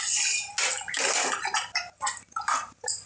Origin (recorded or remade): recorded